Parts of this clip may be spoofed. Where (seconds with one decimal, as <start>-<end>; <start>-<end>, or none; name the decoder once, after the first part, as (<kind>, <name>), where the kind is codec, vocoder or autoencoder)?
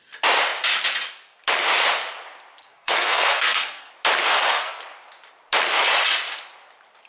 2.6-3.9 (codec, SNAC); 4.3-4.8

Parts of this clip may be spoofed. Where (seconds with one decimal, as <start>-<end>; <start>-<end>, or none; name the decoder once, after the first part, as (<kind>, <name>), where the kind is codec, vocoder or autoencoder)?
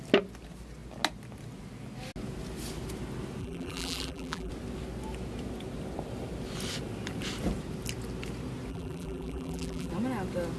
3.4-4.5 (vocoder, BigVGAN v2); 8.7-9.9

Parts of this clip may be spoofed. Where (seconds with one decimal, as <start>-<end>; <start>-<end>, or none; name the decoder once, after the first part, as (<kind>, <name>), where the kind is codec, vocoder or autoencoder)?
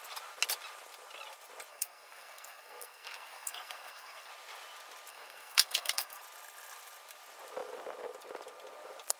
1.7-4.3 (codec, SNAC); 5.1-6.2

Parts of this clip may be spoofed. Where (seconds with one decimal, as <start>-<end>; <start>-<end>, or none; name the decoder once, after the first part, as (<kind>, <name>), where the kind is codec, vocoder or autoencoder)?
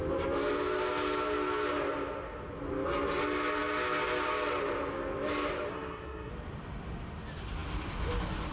5.7-6.3 (codec, SNAC)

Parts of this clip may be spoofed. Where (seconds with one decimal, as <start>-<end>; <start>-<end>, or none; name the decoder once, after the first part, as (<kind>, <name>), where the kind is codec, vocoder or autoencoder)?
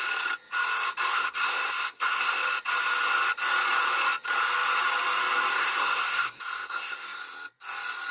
1.1-2.4 (codec, SNAC); 5.5-7.2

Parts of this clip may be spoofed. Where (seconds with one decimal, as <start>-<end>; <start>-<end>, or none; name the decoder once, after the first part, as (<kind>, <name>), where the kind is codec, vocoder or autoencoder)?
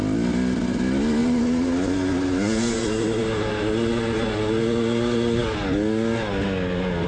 1.2-3.5 (vocoder, BigVGAN v2)